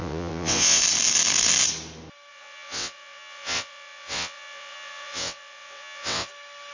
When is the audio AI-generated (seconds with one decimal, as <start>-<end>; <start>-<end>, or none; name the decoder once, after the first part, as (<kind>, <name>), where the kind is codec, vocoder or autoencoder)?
0.0-0.8 (vocoder, WaveNeXt); 2.3-6.3